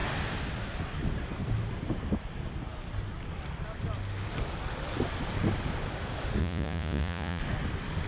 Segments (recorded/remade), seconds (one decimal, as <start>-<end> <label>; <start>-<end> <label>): 0.0-6.4 recorded; 6.4-7.4 remade; 7.4-8.1 recorded